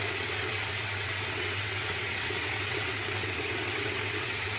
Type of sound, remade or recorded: remade